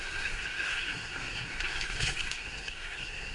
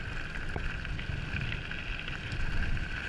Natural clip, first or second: second